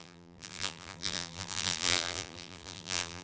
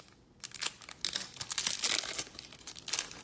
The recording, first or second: second